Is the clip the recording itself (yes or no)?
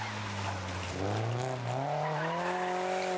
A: yes